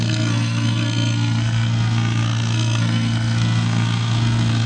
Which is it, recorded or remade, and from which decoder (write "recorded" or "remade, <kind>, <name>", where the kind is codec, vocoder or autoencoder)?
remade, codec, SNAC